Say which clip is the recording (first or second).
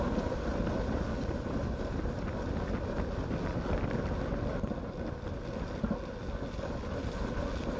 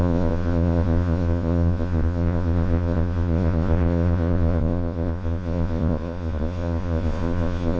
first